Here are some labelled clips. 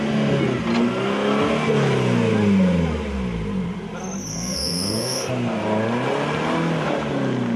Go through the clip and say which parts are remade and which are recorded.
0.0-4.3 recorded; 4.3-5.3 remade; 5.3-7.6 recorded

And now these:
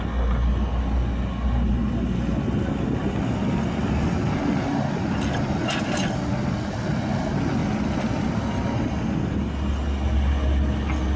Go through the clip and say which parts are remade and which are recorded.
0.0-11.2 recorded

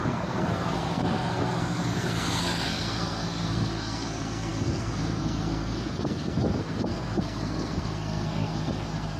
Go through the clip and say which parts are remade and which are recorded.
0.0-9.2 remade

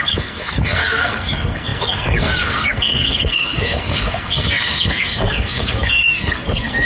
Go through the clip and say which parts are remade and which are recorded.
0.0-6.9 remade

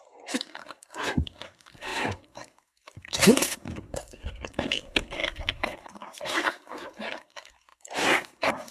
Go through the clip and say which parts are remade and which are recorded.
0.0-8.7 remade

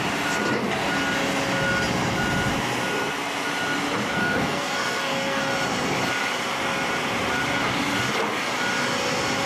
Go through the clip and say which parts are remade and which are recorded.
0.0-4.1 recorded; 4.1-5.5 remade; 5.5-9.5 recorded

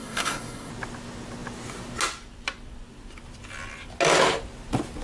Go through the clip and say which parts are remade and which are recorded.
0.0-0.7 remade; 0.7-5.0 recorded